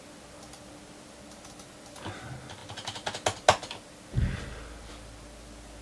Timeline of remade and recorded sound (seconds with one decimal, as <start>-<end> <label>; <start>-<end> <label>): 0.0-5.8 recorded